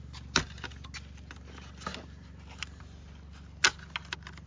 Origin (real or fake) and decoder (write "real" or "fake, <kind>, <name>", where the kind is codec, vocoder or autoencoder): real